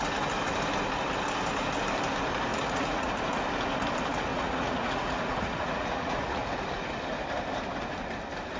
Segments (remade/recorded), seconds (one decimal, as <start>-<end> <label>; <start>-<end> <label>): 0.0-2.5 recorded; 2.5-3.1 remade; 3.1-4.3 recorded; 4.3-6.5 remade; 6.5-8.6 recorded